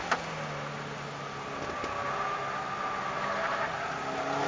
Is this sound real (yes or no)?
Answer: yes